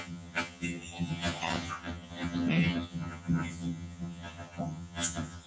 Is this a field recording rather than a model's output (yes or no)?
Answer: no